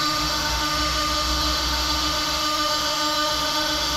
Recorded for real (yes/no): no